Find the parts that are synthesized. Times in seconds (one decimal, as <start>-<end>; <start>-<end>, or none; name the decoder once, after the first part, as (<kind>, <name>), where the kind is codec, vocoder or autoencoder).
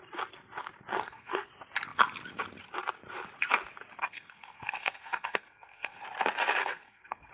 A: 0.9-1.5 (codec, SNAC); 4.0-6.0; 6.6-7.3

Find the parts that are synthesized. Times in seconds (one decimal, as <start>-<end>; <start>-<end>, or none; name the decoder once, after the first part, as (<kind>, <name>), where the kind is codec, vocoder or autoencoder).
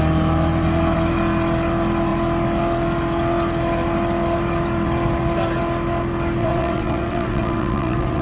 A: 6.4-8.2 (vocoder, WaveNeXt)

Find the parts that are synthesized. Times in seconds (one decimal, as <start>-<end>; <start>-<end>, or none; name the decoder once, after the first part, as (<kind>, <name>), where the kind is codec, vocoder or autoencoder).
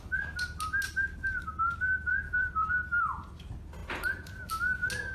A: 2.1-3.3 (vocoder, BigVGAN v2)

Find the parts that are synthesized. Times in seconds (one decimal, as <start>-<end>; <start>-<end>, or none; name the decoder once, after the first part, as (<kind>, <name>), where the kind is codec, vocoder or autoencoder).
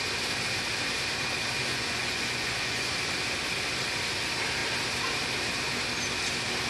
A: 1.7-2.9 (vocoder, Vocos)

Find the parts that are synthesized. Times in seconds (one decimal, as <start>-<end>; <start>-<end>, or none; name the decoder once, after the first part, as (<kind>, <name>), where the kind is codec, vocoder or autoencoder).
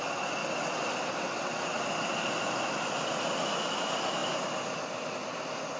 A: 0.4-1.8 (vocoder, WaveNeXt)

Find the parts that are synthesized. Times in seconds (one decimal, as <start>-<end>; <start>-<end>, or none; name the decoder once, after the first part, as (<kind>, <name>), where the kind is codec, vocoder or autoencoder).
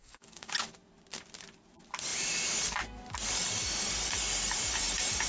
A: 0.0-0.5 (codec, DAC)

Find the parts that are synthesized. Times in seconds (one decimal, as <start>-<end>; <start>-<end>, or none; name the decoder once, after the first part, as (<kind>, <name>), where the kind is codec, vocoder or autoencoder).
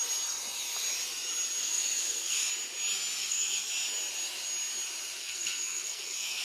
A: 1.6-2.5 (codec, SNAC); 3.2-3.7; 5.2-6.4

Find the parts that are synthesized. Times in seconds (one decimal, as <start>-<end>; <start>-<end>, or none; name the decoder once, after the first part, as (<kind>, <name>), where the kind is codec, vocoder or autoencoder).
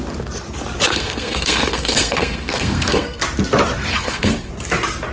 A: 0.9-3.2 (codec, SNAC); 3.9-4.5